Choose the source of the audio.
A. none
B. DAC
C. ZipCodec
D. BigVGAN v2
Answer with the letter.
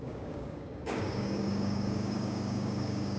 B